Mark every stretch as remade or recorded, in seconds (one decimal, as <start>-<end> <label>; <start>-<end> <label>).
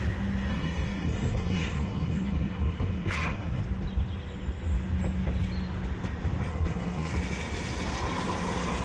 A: 0.0-0.5 recorded; 0.5-3.6 remade; 3.6-6.5 recorded; 6.5-7.1 remade; 7.1-8.8 recorded